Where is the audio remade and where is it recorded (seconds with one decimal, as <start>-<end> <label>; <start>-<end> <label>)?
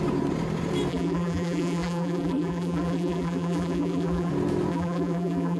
0.0-0.9 recorded; 0.9-4.3 remade; 4.3-4.7 recorded; 4.7-5.6 remade